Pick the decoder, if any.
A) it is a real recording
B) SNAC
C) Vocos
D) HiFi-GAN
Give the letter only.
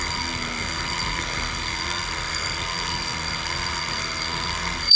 B